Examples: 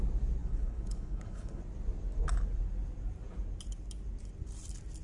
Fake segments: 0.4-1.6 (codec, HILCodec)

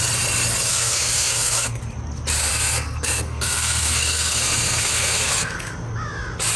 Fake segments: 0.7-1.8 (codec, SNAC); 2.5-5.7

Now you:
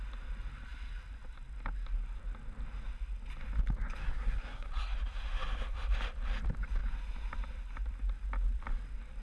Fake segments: 4.0-4.7 (codec, SNAC)